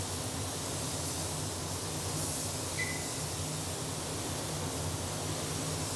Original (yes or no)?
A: yes